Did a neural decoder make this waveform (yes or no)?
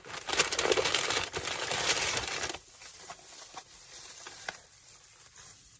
no